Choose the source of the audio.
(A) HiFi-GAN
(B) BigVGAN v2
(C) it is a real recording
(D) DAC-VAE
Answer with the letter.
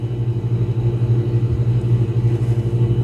C